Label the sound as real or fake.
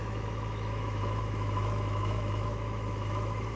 fake